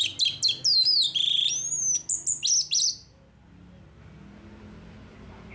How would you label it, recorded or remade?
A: recorded